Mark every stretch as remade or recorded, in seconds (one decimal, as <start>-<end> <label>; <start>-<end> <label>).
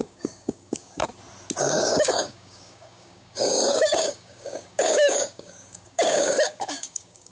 0.0-1.1 remade; 1.1-1.6 recorded; 1.6-7.3 remade